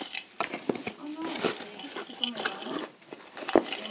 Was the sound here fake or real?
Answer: real